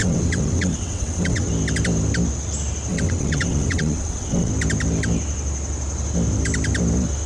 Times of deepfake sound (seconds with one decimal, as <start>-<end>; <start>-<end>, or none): 0.0-1.5; 2.9-4.5